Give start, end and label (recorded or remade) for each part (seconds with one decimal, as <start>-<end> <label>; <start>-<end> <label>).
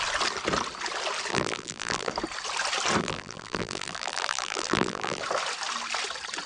0.0-1.3 recorded; 1.3-2.1 remade; 2.1-3.0 recorded; 3.0-5.2 remade; 5.2-6.5 recorded